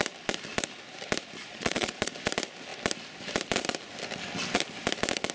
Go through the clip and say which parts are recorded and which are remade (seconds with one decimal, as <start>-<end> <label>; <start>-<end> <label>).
0.0-1.4 recorded; 1.4-2.1 remade; 2.1-5.3 recorded